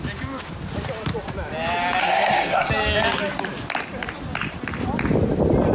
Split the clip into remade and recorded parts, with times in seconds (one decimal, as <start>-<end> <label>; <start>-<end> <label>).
0.0-2.0 recorded; 2.0-2.7 remade; 2.7-5.7 recorded